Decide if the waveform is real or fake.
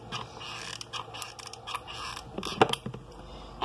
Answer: real